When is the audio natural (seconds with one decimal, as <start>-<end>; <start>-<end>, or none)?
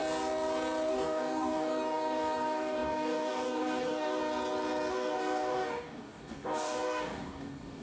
0.0-0.9; 4.2-4.9